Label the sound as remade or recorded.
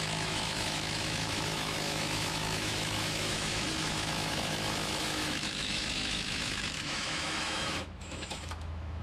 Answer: remade